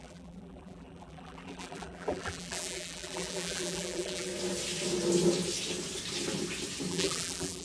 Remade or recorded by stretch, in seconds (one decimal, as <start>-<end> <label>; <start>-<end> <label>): 0.0-4.3 remade; 4.3-6.9 recorded; 6.9-7.6 remade